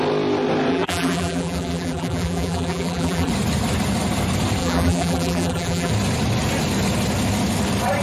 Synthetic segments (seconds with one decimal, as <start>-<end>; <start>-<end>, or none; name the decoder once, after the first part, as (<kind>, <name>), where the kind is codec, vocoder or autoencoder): 0.7-3.3 (vocoder, BigVGAN v2); 4.6-5.9